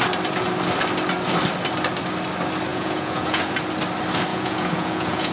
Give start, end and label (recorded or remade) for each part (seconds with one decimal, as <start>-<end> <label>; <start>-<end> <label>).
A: 0.0-2.7 recorded; 2.7-3.4 remade; 3.4-4.3 recorded; 4.3-5.3 remade